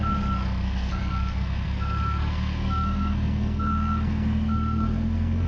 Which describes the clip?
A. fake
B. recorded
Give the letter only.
A